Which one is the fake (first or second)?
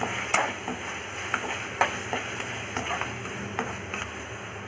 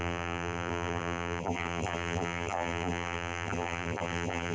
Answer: second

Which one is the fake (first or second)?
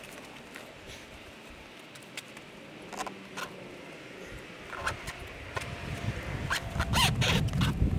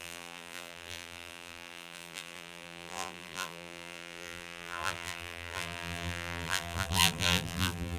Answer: second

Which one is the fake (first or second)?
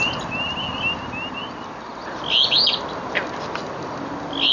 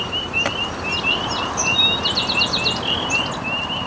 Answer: second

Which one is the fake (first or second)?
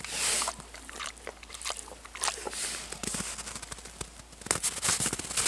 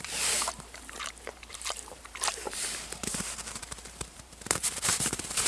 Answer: second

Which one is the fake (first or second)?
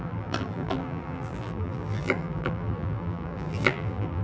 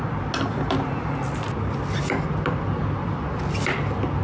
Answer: first